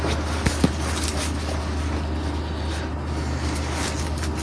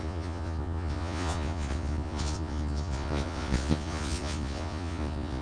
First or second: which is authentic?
first